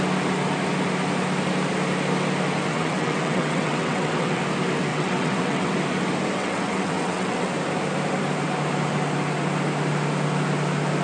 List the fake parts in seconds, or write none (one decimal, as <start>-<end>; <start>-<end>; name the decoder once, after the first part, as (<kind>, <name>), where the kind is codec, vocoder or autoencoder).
2.7-4.4 (vocoder, WaveNeXt); 4.9-5.7; 6.4-7.5